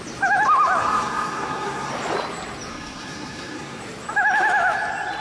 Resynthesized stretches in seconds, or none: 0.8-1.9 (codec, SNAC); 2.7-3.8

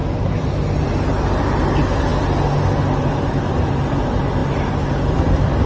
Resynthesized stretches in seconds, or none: none

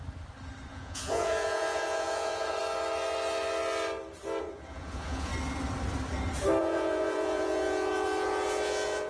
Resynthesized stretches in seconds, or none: 0.7-2.6 (vocoder, Vocos); 4.4-5.3; 6.6-9.1

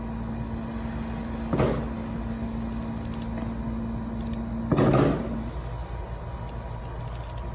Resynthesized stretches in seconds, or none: none

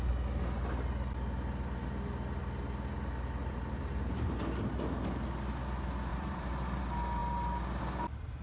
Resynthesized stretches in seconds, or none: 3.4-4.4 (vocoder, BigVGAN v2); 6.1-6.8

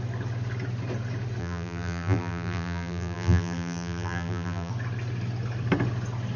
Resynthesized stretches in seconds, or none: 1.4-4.7 (vocoder, BigVGAN v2)

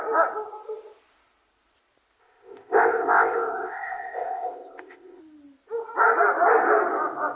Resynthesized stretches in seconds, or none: 2.2-5.2 (codec, ZipCodec)

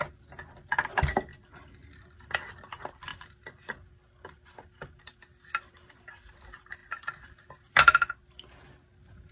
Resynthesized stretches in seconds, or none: 0.0-1.3 (vocoder, BigVGAN v2); 2.5-3.1; 5.7-6.8